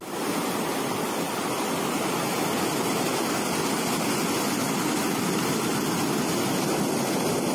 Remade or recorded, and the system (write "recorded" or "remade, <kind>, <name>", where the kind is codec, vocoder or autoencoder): recorded